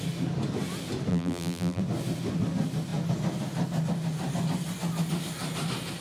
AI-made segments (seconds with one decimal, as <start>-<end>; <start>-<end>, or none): 1.1-1.8